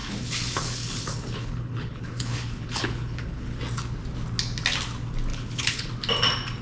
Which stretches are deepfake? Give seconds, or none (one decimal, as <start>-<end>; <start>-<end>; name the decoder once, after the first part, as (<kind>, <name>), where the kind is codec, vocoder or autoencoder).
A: 0.0-3.6 (codec, HILCodec); 5.3-5.9